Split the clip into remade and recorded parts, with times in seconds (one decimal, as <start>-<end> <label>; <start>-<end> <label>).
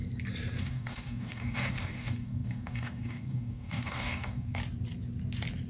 0.0-0.6 recorded; 0.6-4.6 remade; 4.6-5.7 recorded